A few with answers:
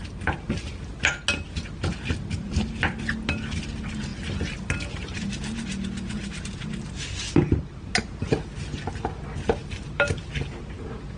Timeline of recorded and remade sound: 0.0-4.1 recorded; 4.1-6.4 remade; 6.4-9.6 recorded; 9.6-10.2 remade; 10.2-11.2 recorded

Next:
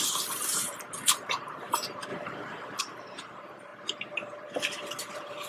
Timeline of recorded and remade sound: 0.0-3.7 remade; 3.7-4.4 recorded; 4.4-5.5 remade

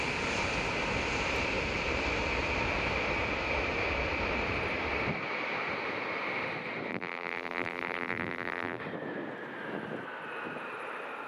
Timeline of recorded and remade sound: 0.0-6.9 recorded; 6.9-8.8 remade; 8.8-11.3 recorded

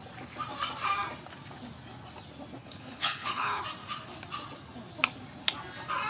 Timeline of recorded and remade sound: 0.0-2.6 recorded; 2.6-3.6 remade; 3.6-6.1 recorded

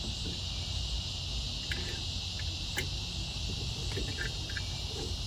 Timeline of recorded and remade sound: 0.0-3.3 recorded; 3.3-5.3 remade